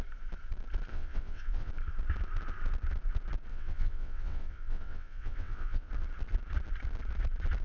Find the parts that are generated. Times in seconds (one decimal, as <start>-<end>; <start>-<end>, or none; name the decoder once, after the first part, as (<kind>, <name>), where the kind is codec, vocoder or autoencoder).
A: 0.9-1.7 (vocoder, WaveNeXt); 3.5-5.9